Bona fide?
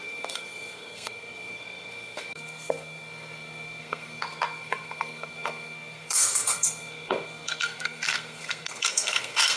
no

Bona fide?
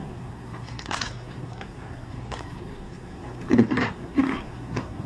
no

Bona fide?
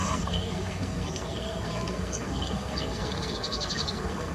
no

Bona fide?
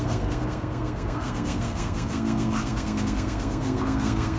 no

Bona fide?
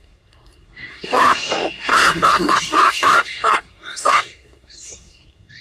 no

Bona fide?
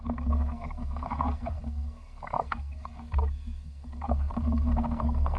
no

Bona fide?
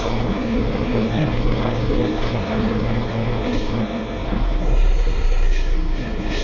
no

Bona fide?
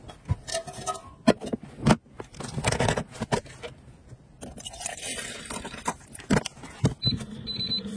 yes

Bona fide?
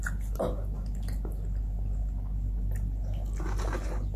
yes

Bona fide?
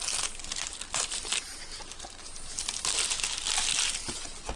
yes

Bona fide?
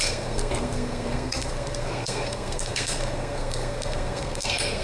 no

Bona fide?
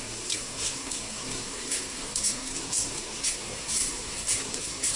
no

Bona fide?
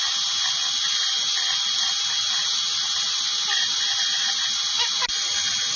yes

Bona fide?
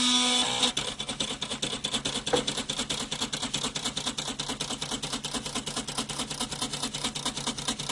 yes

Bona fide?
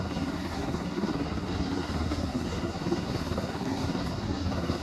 no